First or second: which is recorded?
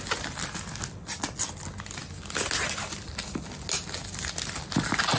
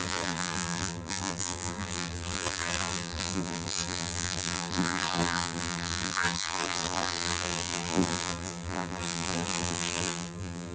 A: first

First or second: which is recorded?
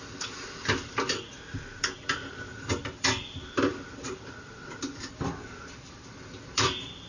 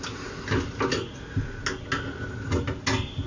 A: second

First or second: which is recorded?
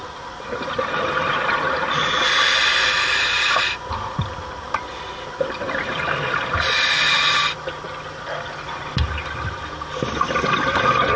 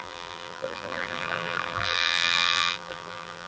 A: first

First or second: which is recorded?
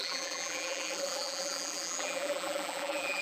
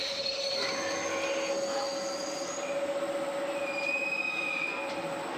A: second